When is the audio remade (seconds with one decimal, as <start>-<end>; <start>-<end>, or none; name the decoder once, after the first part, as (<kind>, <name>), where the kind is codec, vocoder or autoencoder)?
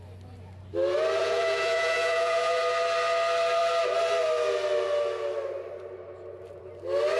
1.2-2.6 (vocoder, Vocos)